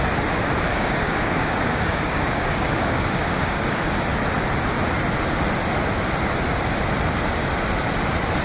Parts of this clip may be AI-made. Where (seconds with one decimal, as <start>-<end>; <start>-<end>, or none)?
0.7-3.8